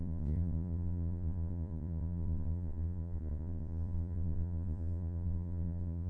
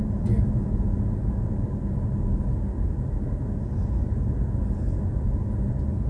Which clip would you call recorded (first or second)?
second